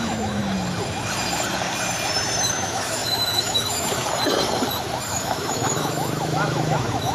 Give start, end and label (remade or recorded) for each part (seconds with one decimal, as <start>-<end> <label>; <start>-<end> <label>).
0.0-0.4 remade; 0.4-2.6 recorded; 2.6-4.0 remade; 4.0-5.1 recorded; 5.1-7.1 remade